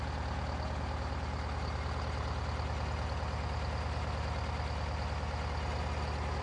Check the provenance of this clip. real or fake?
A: real